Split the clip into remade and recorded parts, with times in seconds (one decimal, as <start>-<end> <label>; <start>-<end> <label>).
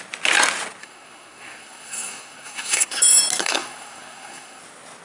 0.0-0.8 recorded; 0.8-3.0 remade; 3.0-3.4 recorded; 3.4-4.6 remade; 4.6-5.0 recorded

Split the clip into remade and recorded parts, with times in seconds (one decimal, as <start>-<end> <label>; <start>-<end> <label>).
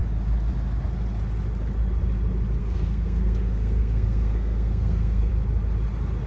0.0-2.6 recorded; 2.6-5.3 remade; 5.3-6.3 recorded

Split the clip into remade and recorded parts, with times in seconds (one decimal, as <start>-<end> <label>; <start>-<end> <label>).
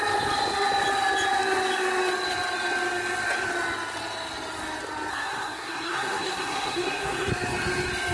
0.0-5.1 recorded; 5.1-7.3 remade; 7.3-8.1 recorded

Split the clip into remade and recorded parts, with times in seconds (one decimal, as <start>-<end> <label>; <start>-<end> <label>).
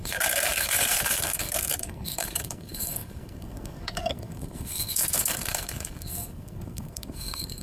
0.0-7.6 remade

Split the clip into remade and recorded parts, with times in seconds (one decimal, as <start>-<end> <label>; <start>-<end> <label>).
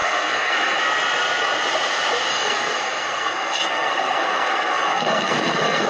0.0-0.8 remade; 0.8-2.3 recorded; 2.3-5.9 remade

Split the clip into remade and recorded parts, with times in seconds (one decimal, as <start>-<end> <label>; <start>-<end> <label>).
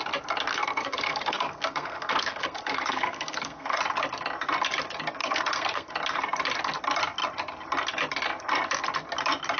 0.0-0.5 recorded; 0.5-3.8 remade; 3.8-5.2 recorded; 5.2-5.9 remade; 5.9-9.6 recorded